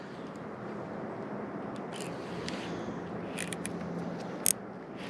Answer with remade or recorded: recorded